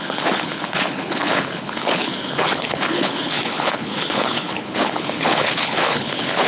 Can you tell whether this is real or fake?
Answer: fake